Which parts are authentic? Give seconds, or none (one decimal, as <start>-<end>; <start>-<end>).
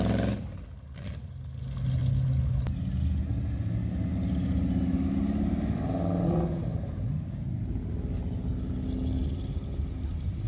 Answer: 0.0-10.5